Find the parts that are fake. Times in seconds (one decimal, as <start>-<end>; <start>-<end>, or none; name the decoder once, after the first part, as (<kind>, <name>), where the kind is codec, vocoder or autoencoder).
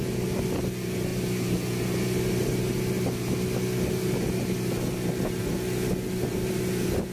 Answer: none